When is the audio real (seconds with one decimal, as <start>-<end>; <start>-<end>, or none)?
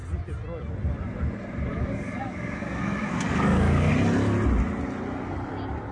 0.0-1.7; 3.9-5.9